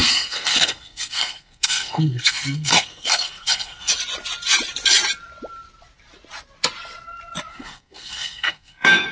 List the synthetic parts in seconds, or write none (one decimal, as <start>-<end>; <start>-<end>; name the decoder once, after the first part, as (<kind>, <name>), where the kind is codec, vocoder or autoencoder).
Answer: 0.0-3.9 (codec, SNAC); 7.5-9.1